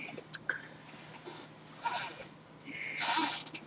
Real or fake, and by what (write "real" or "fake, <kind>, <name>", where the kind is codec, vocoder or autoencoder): real